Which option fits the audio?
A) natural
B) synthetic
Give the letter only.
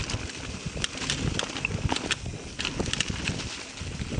A